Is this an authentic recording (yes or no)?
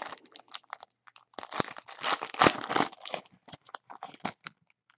yes